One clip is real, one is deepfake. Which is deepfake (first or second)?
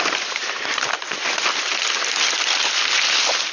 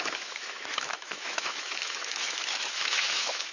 second